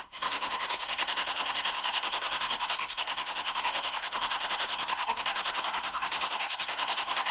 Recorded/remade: remade